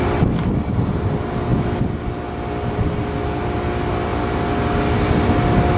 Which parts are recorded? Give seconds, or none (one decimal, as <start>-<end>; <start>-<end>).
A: 0.0-5.8